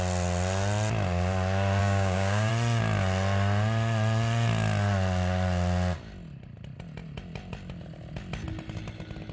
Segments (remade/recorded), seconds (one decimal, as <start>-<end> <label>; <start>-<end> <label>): 0.0-1.8 recorded; 1.8-2.5 remade; 2.5-9.3 recorded